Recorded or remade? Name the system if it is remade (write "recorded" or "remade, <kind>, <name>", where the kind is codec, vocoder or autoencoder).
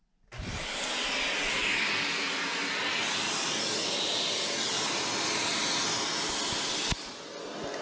recorded